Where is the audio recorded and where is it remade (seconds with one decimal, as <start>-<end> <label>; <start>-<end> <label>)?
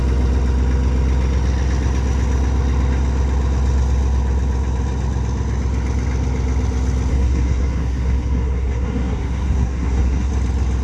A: 0.0-7.1 recorded; 7.1-10.3 remade; 10.3-10.8 recorded